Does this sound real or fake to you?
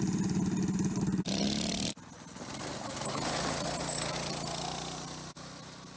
real